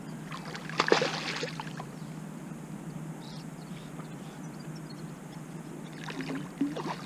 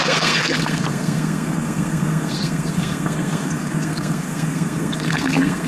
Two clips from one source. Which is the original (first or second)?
first